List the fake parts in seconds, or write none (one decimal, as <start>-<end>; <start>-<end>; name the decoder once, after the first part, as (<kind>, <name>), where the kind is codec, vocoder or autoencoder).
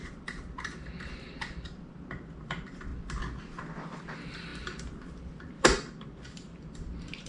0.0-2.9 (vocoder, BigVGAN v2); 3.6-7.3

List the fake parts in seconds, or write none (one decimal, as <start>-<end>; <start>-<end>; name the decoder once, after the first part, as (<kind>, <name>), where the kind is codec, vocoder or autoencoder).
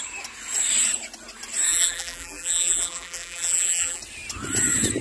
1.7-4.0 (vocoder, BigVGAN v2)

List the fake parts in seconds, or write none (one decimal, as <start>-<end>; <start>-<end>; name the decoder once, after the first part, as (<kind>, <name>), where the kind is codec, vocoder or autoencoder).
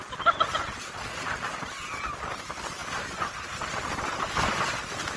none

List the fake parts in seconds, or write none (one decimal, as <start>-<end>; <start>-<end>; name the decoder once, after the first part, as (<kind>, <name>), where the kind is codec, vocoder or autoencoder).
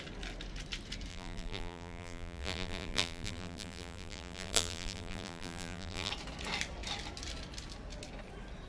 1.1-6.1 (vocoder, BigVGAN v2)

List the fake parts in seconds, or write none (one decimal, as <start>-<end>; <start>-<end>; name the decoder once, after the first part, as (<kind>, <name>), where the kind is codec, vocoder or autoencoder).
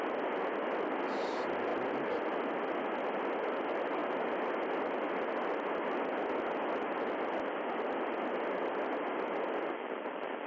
none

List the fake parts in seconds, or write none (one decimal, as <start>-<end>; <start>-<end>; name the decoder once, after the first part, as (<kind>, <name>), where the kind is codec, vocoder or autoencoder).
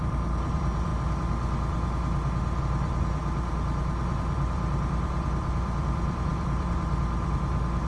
0.0-0.9 (vocoder, BigVGAN v2); 2.6-3.2; 4.0-7.9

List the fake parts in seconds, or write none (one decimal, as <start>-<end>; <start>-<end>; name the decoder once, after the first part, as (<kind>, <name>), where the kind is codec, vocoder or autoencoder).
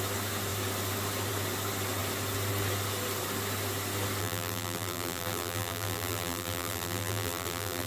4.2-7.9 (vocoder, BigVGAN v2)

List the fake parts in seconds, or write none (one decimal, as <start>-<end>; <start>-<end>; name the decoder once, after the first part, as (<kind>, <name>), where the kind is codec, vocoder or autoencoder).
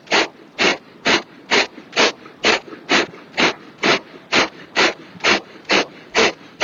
0.7-1.5 (vocoder, BigVGAN v2); 3.9-6.6